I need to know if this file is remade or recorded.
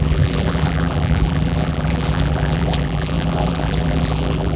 remade